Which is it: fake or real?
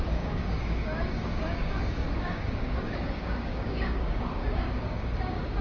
fake